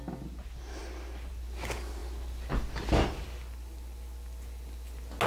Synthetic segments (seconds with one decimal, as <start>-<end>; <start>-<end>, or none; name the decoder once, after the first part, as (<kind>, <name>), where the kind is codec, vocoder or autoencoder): none